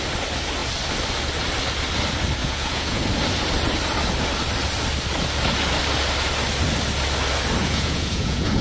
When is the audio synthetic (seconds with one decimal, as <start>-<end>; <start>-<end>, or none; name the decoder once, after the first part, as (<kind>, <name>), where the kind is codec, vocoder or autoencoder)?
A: 2.4-3.0 (vocoder, Vocos); 7.6-8.6